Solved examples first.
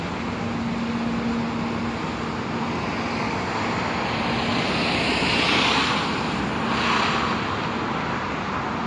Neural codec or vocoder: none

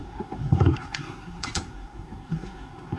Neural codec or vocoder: codec, SNAC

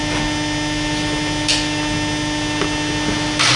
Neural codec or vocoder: none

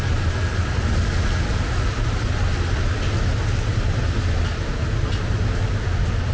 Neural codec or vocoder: none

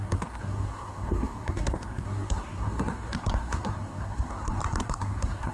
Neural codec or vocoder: codec, SNAC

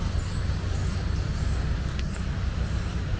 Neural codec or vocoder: none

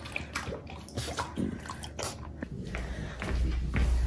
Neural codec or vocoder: none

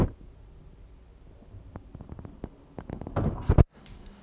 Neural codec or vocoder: none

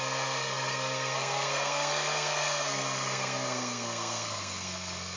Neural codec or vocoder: codec, SNAC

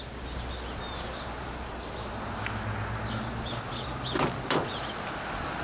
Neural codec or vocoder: none